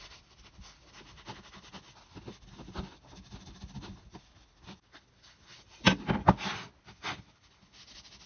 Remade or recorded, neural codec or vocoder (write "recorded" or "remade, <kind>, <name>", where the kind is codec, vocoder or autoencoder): recorded